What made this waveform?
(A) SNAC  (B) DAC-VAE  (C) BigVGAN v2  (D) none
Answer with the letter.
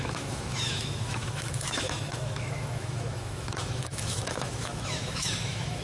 B